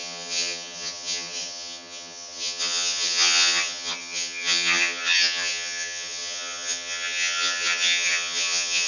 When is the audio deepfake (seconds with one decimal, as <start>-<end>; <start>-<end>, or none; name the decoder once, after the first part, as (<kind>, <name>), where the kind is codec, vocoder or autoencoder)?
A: 0.0-8.9 (vocoder, HiFi-GAN)